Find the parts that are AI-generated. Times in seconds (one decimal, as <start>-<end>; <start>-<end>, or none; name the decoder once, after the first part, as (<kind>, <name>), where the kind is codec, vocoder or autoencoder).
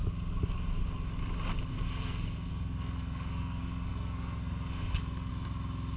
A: 1.7-5.3 (codec, SNAC)